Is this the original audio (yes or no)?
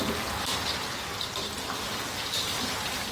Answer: yes